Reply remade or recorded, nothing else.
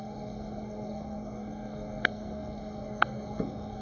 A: remade